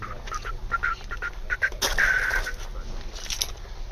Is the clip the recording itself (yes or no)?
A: yes